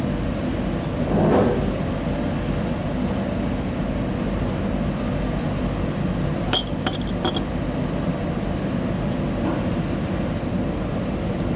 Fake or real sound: real